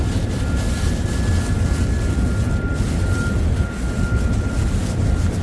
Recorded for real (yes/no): yes